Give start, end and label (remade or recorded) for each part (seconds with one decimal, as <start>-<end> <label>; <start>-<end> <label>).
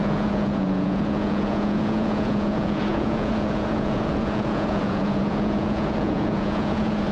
0.0-7.1 remade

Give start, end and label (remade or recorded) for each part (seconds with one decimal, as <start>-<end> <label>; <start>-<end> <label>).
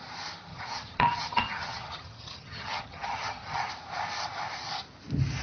0.0-0.5 recorded; 0.5-3.7 remade; 3.7-5.4 recorded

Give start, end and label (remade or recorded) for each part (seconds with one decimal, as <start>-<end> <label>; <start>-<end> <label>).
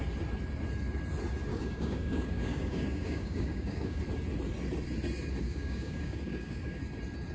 0.0-1.5 recorded; 1.5-4.0 remade; 4.0-5.4 recorded; 5.4-6.8 remade; 6.8-7.3 recorded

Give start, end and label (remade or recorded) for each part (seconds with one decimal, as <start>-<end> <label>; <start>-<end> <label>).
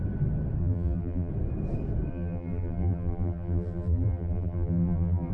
0.0-0.6 recorded; 0.6-1.3 remade; 1.3-2.1 recorded; 2.1-5.3 remade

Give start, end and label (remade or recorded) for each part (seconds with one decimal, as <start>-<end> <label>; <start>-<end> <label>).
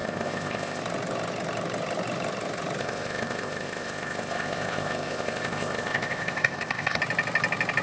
0.0-0.8 remade; 0.8-2.8 recorded; 2.8-7.0 remade; 7.0-7.8 recorded